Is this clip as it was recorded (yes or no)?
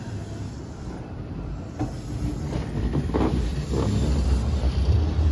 yes